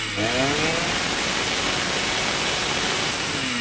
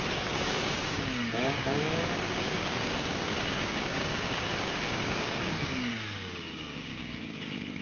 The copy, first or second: second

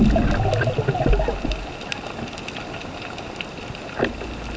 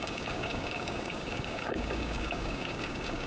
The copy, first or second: second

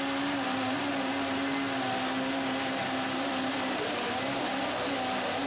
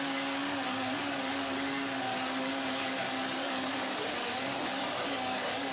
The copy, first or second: second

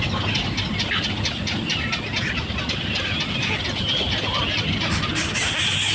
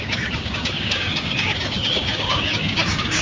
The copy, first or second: second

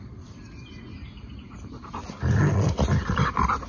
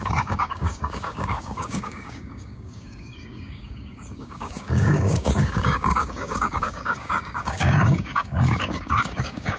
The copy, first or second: second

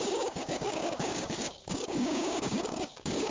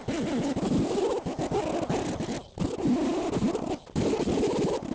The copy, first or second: first